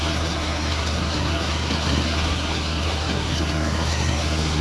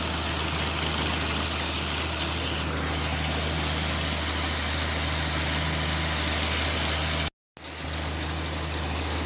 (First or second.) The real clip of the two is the second